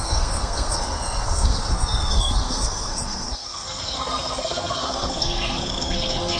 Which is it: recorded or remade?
remade